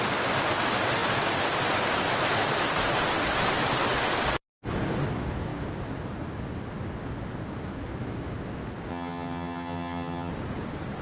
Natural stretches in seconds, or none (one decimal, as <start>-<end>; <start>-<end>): 0.0-8.9; 10.3-11.0